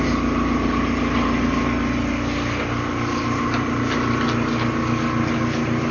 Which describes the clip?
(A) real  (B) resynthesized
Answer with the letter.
A